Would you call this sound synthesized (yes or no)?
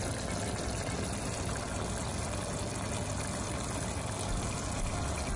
no